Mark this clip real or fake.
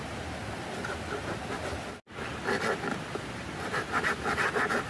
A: real